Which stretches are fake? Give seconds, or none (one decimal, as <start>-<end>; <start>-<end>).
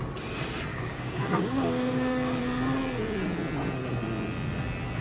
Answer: 0.7-2.4